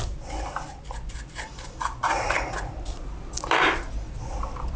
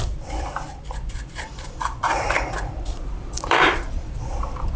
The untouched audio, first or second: first